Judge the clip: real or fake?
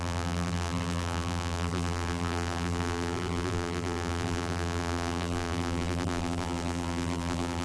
fake